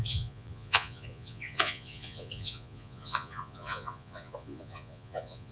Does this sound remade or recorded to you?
remade